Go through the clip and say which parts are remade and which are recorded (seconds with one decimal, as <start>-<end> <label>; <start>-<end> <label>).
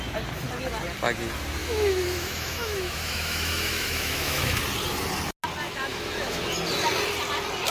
0.0-1.6 recorded; 1.6-4.6 remade; 4.6-5.9 recorded; 5.9-6.4 remade; 6.4-7.7 recorded